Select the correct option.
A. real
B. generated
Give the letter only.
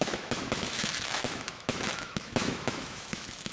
B